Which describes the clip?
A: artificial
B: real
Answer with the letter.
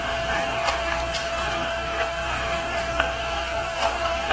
A